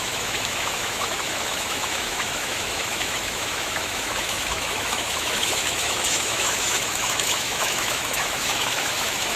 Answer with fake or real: fake